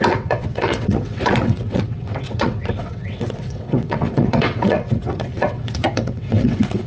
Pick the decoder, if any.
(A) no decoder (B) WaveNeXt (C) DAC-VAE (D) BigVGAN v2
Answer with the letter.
B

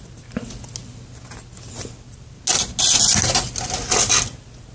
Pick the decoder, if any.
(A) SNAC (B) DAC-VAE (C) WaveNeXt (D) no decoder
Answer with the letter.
D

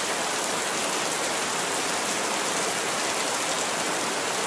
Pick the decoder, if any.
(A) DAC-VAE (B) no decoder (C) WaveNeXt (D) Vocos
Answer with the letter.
B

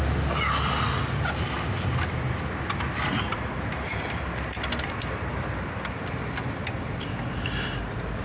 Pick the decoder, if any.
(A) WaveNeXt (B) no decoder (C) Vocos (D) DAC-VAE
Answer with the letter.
B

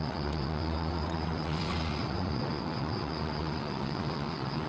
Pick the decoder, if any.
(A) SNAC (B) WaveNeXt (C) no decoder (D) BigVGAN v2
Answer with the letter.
B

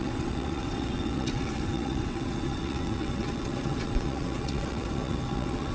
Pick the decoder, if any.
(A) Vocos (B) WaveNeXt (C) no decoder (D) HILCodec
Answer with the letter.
B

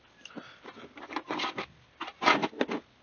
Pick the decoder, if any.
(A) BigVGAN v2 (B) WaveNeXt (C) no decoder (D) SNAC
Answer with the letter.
C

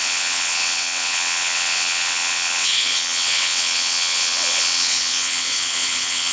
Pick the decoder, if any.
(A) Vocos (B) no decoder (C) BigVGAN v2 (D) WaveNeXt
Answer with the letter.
D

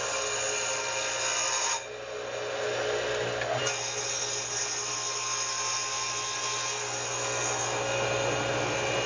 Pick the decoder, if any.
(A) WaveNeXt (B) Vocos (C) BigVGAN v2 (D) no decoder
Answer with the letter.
D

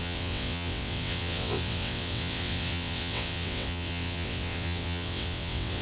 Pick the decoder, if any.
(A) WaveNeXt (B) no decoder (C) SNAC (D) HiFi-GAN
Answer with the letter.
A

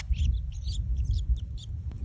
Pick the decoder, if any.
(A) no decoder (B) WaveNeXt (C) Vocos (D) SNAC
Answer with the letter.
A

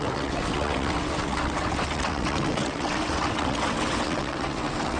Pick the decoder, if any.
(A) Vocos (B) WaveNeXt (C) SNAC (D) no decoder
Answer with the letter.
B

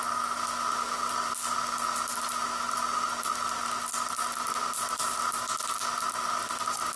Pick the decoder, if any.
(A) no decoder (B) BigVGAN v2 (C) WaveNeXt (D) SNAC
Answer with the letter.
A